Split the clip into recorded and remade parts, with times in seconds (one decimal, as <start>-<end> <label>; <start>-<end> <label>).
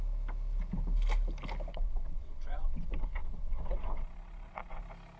0.0-1.7 recorded; 1.7-4.8 remade; 4.8-5.2 recorded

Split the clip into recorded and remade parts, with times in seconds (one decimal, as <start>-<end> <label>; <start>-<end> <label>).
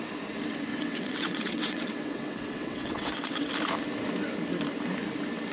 0.0-0.7 recorded; 0.7-3.5 remade; 3.5-5.5 recorded